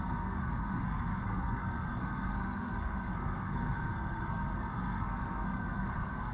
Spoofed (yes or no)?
yes